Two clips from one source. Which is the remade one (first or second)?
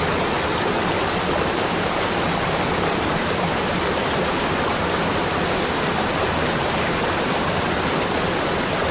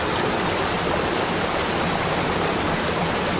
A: first